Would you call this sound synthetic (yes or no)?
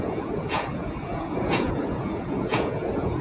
yes